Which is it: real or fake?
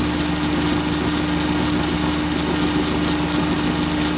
real